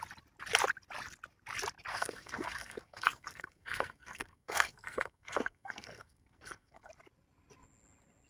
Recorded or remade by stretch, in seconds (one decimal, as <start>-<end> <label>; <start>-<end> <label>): 0.0-1.9 recorded; 1.9-6.9 remade; 6.9-8.3 recorded